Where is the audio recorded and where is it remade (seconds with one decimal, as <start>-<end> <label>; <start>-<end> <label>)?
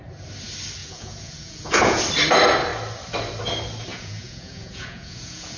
0.0-0.8 recorded; 0.8-2.0 remade; 2.0-3.9 recorded; 3.9-5.6 remade